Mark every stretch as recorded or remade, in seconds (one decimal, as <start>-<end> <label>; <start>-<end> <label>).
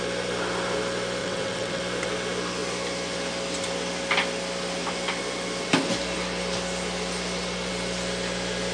0.0-1.2 recorded; 1.2-1.8 remade; 1.8-8.7 recorded